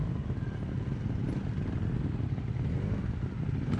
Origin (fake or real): real